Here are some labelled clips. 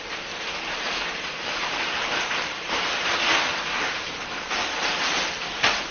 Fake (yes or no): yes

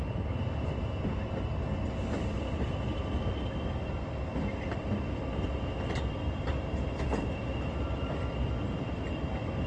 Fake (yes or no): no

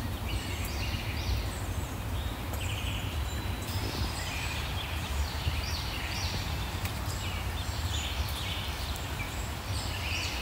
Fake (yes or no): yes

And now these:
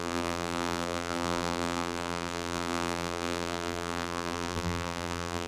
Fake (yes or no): yes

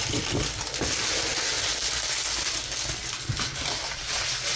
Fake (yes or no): no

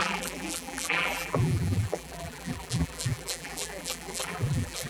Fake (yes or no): yes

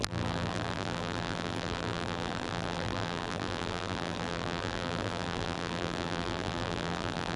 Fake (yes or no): yes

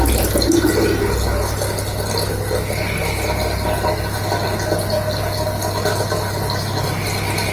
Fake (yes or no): no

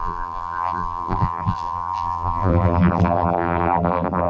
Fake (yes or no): yes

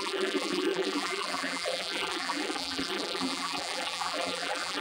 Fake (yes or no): yes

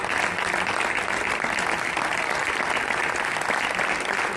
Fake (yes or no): no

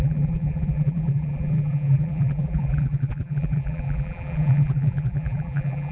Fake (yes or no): yes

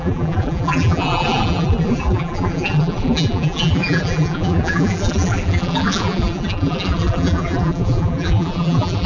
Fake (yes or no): yes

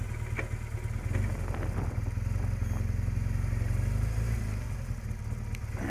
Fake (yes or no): no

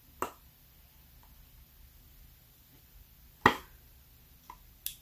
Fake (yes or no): no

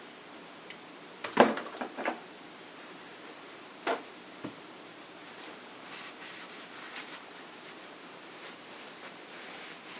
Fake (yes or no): yes